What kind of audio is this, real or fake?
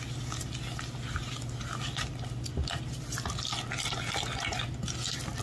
real